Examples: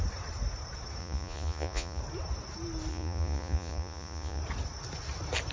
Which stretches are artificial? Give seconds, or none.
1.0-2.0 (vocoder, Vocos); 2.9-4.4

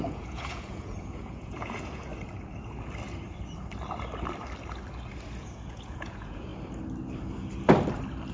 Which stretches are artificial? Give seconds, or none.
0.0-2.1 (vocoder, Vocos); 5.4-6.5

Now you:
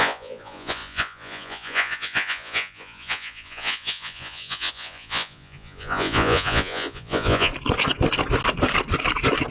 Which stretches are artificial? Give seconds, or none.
0.0-7.5 (vocoder, Vocos)

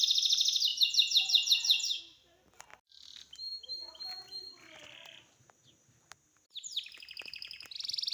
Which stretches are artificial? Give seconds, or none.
0.7-2.0 (vocoder, Vocos)

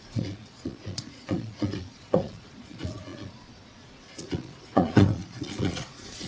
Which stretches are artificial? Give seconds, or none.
0.0-6.3 (vocoder, Vocos)

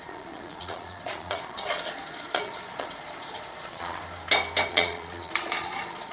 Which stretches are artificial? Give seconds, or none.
0.0-4.0 (vocoder, Vocos); 4.7-6.1